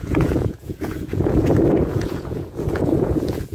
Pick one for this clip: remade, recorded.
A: remade